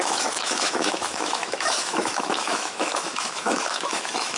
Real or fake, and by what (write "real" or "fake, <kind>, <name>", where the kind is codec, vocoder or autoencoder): fake, autoencoder, DAC-VAE